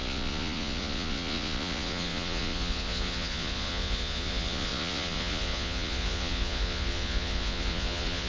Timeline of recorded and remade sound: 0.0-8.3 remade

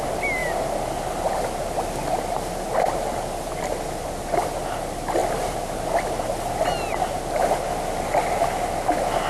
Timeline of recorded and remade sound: 0.0-9.3 recorded

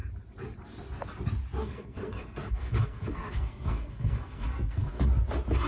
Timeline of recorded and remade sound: 0.0-1.6 recorded; 1.6-5.0 remade; 5.0-5.7 recorded

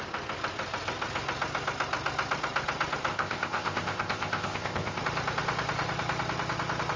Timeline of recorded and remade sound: 0.0-3.1 recorded; 3.1-5.0 remade; 5.0-7.0 recorded

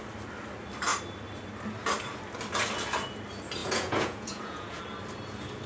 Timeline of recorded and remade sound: 0.0-3.6 recorded; 3.6-4.8 remade; 4.8-5.7 recorded

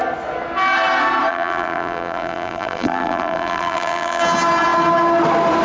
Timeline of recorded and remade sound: 0.0-1.3 recorded; 1.3-4.2 remade; 4.2-5.6 recorded